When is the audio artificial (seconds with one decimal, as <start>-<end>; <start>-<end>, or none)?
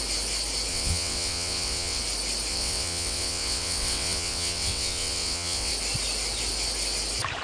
0.7-2.0; 2.5-5.7